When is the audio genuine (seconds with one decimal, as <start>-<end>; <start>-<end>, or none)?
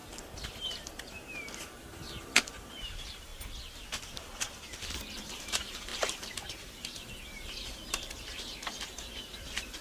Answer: 0.0-0.6; 3.3-4.8